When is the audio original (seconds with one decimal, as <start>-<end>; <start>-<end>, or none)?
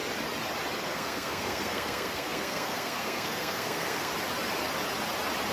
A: 0.0-0.8; 4.1-5.5